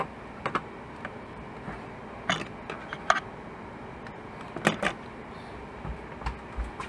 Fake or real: real